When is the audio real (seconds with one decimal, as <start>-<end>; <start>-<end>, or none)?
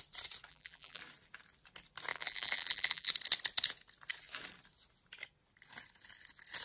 0.0-0.5; 1.0-2.1; 3.1-6.6